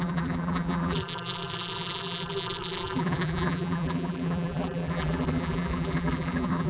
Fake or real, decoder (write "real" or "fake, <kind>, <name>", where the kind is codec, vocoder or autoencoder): fake, vocoder, BigVGAN v2